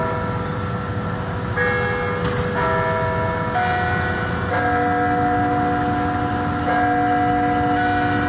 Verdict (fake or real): real